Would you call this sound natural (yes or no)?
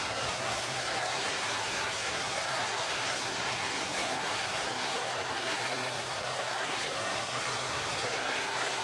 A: no